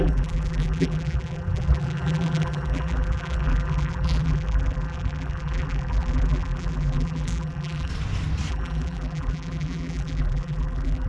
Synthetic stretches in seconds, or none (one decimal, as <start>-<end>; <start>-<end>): 0.0-7.9; 8.5-11.1